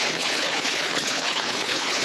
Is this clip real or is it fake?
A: fake